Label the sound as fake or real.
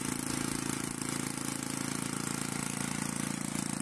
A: real